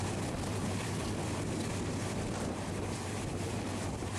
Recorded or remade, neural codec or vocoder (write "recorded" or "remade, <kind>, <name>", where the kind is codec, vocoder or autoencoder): remade, vocoder, BigVGAN v2